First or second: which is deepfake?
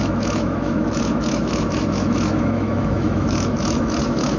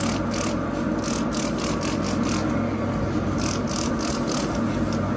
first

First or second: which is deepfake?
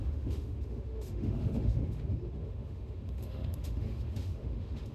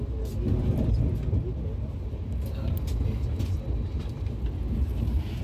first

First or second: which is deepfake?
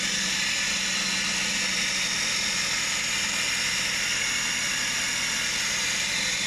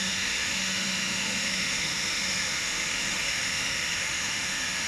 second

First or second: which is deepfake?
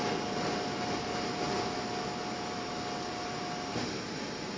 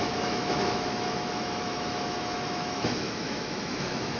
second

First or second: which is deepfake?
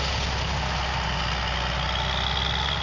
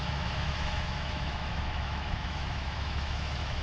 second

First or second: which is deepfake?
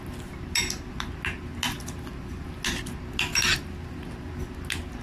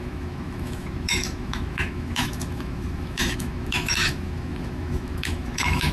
second